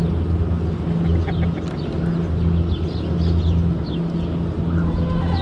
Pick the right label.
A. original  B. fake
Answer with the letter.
A